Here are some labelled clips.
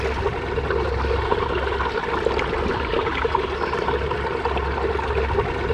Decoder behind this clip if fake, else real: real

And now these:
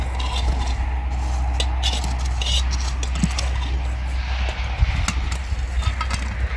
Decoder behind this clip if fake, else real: real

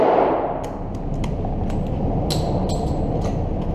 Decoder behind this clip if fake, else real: real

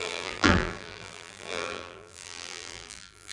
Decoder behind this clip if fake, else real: fake, vocoder, BigVGAN v2